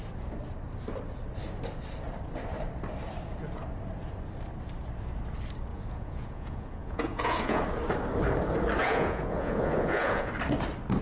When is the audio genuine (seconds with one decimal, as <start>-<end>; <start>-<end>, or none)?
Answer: 0.0-5.7; 7.6-8.8; 10.3-11.0